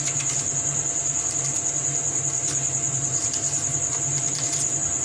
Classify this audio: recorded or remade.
recorded